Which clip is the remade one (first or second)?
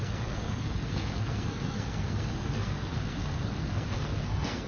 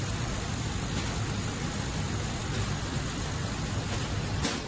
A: first